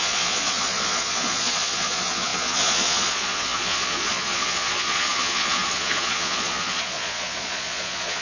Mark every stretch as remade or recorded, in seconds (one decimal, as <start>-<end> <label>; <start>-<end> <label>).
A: 0.0-8.2 remade